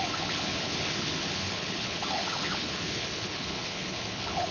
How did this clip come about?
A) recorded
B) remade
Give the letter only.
B